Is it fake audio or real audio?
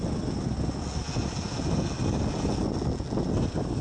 real